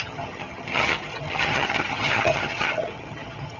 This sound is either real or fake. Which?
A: fake